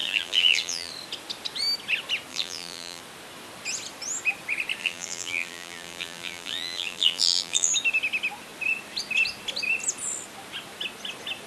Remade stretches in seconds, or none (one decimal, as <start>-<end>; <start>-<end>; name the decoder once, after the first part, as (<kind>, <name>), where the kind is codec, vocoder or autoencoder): 0.0-0.9 (vocoder, BigVGAN v2); 2.3-3.0; 4.8-7.7